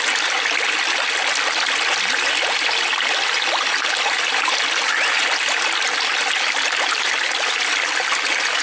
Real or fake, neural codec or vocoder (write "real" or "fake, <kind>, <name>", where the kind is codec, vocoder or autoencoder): real